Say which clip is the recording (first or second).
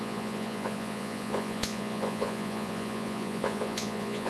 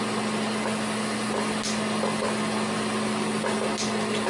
second